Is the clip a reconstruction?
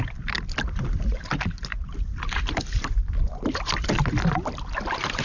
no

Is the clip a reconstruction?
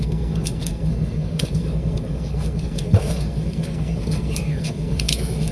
yes